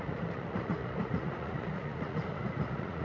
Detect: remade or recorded remade